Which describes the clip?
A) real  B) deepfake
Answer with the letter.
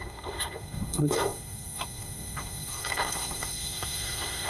B